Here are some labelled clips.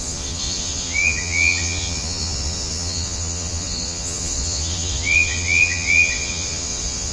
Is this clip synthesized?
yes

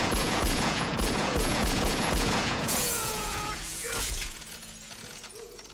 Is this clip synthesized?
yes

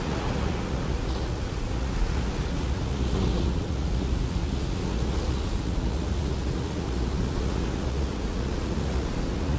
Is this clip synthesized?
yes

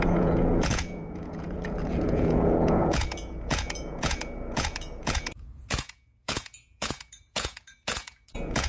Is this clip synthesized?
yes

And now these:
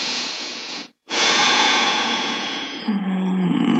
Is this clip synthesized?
yes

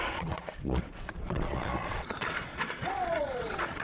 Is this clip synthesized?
yes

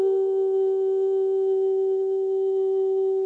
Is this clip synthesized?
no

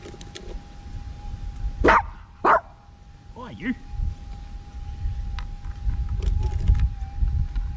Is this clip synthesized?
no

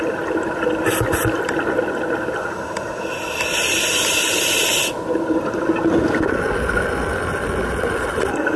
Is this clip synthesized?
no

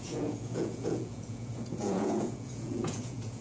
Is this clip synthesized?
yes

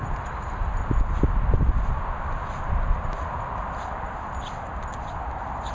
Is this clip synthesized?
no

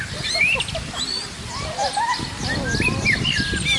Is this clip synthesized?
no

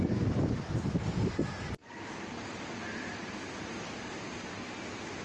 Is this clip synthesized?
no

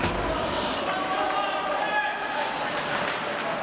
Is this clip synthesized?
no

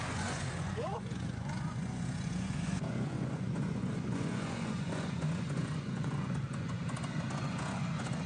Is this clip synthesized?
yes